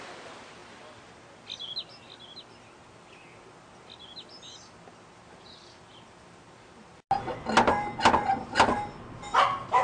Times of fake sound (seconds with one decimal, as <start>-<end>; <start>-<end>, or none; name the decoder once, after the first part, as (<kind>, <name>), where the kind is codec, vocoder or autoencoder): none